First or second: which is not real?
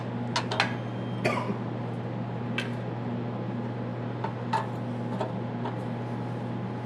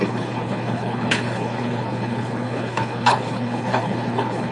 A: second